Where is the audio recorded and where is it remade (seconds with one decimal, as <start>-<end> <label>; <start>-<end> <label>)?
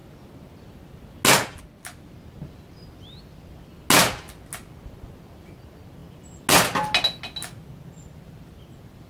0.0-9.1 recorded